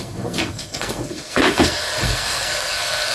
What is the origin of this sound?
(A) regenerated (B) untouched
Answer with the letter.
A